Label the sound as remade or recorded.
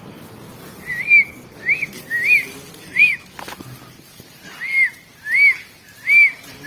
recorded